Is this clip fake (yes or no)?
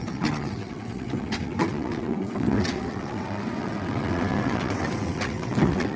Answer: yes